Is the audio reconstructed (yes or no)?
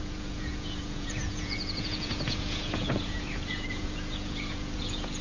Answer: yes